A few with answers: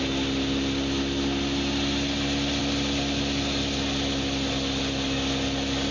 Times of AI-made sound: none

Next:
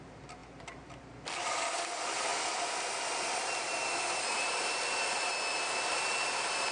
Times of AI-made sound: none